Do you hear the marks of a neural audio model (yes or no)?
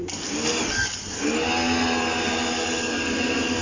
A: no